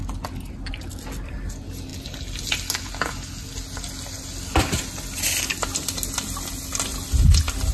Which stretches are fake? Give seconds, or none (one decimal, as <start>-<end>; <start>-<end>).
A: none